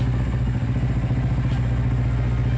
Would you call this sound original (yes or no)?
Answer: yes